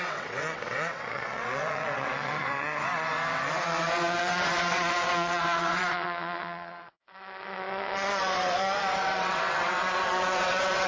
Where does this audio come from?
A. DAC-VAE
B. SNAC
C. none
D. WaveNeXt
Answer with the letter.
D